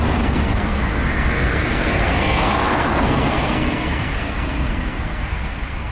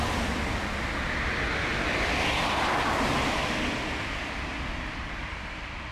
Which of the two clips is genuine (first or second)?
second